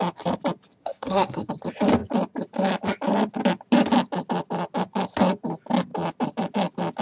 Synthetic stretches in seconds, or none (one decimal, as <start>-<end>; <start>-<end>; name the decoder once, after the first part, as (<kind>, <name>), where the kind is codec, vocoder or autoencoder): 0.8-1.5 (codec, SNAC)